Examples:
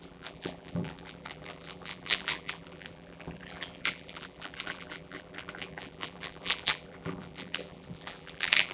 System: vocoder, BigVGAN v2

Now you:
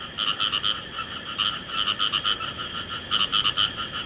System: none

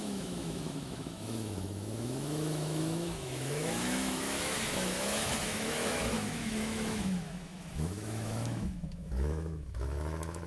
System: autoencoder, DAC-VAE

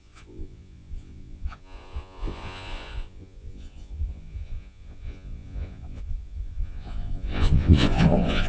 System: vocoder, Vocos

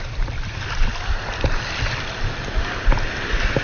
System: none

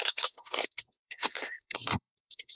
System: codec, SNAC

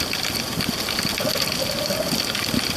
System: none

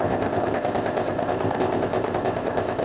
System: codec, ZipCodec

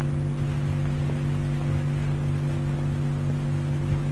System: none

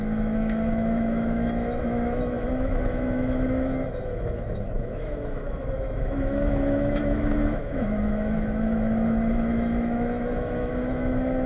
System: autoencoder, DAC-VAE